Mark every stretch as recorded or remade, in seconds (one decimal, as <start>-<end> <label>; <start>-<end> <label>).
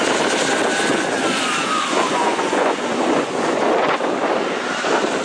0.0-0.9 recorded; 0.9-4.0 remade; 4.0-5.2 recorded